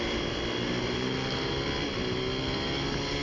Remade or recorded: recorded